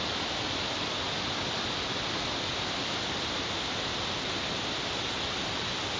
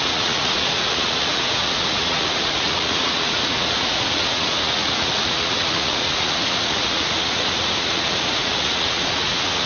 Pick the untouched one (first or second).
first